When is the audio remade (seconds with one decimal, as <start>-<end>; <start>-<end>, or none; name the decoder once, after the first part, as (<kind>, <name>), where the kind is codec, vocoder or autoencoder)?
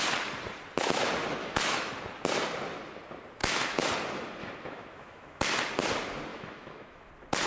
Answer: 1.4-1.9 (autoencoder, DAC-VAE); 3.4-3.9; 4.4-5.4; 6.3-7.1